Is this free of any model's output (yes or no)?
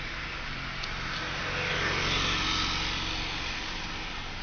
yes